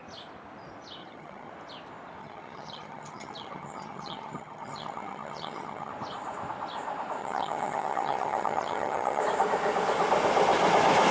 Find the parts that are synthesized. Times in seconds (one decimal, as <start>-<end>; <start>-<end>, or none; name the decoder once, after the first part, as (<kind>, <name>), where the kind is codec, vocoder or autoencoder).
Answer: 1.0-1.5 (vocoder, HiFi-GAN); 2.2-5.9; 7.2-9.2